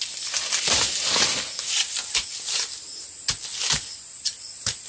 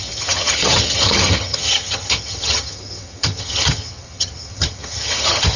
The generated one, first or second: second